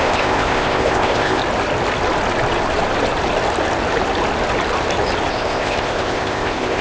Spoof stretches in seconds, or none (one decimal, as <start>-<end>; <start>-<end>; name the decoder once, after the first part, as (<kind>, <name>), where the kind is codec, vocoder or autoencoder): 0.0-1.4 (codec, ZipCodec); 5.3-6.8